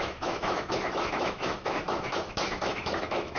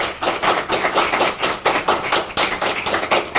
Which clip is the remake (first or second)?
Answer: first